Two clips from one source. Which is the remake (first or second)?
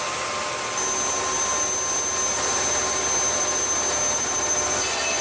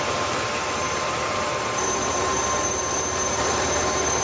second